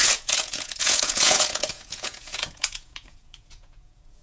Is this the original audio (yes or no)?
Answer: no